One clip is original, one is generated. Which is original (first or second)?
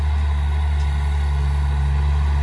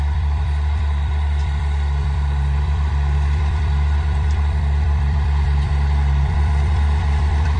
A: first